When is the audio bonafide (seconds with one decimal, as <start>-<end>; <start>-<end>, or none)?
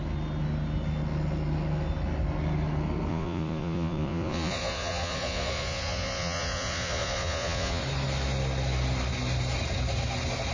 0.0-3.1; 7.8-10.5